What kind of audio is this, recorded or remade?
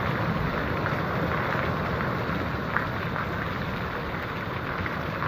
recorded